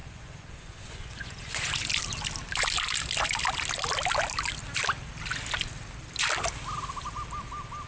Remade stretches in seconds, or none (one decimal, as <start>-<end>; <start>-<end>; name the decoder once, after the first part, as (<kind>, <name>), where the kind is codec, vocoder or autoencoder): 0.0-1.7 (vocoder, Vocos)